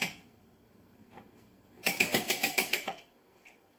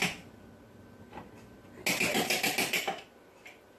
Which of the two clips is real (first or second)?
second